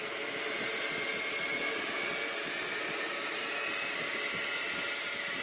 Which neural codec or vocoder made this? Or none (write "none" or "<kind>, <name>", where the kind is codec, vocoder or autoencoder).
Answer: none